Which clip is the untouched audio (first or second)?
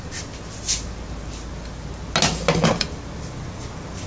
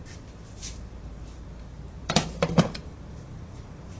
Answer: first